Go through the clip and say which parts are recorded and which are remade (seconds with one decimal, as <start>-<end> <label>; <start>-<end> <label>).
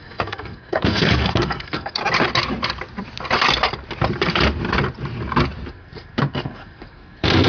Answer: 0.0-2.0 remade; 2.0-5.7 recorded; 5.7-7.5 remade